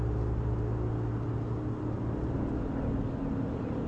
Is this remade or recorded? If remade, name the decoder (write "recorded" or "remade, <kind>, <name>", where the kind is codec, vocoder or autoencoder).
recorded